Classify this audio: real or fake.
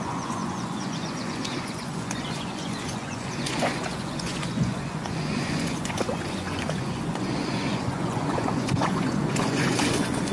fake